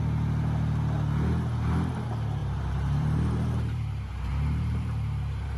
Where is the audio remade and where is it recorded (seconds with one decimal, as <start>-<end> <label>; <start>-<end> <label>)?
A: 0.0-2.4 recorded; 2.4-5.6 remade